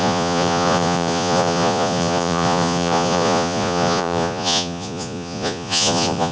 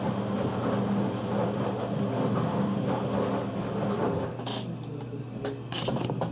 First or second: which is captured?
second